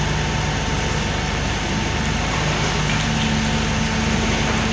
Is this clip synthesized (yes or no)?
no